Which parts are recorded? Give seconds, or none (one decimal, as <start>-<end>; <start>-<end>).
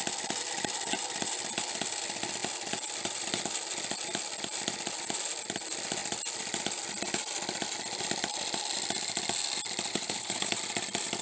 0.0-9.9; 10.5-11.2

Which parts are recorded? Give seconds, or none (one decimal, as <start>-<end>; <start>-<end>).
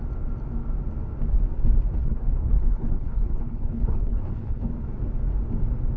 0.0-2.0; 4.7-6.0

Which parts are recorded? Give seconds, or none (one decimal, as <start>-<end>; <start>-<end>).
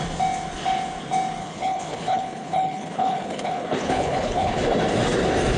0.0-1.4; 4.6-5.6